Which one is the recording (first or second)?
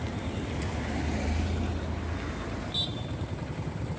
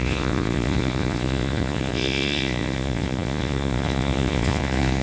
first